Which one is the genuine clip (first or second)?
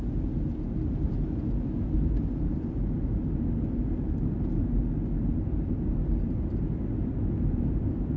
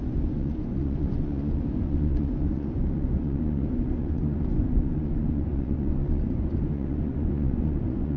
first